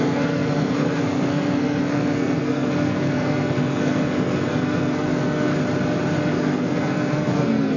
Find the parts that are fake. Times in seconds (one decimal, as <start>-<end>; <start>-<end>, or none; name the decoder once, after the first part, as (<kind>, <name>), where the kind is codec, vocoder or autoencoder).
0.0-5.5 (codec, SNAC); 6.2-7.8